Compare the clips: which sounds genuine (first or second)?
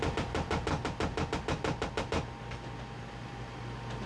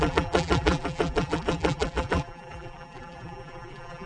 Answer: first